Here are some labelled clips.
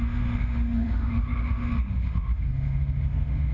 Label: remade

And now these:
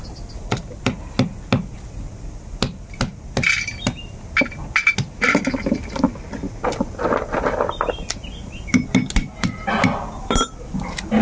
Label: recorded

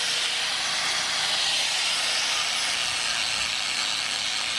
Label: recorded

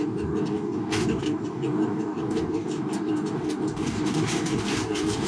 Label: remade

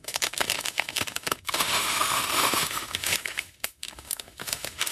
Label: remade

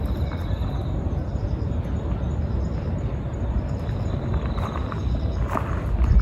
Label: recorded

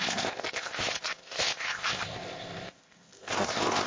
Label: remade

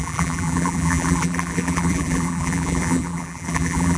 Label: remade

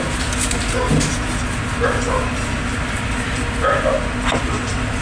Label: recorded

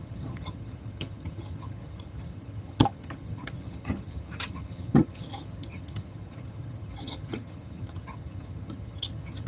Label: remade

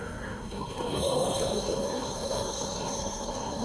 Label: remade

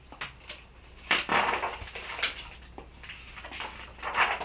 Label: recorded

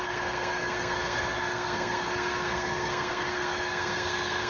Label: remade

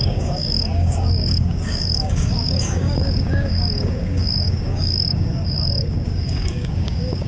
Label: remade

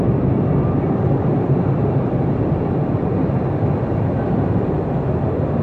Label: recorded